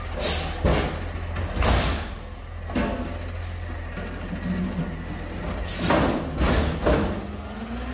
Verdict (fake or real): real